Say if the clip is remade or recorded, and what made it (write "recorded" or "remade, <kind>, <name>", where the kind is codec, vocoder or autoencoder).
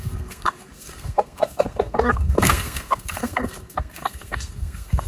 remade, codec, SNAC